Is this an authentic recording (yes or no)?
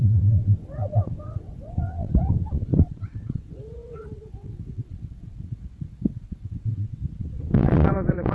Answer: no